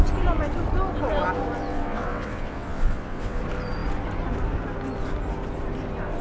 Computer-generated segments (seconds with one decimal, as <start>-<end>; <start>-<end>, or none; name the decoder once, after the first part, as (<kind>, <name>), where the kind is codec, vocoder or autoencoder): 1.6-3.4 (vocoder, WaveNeXt)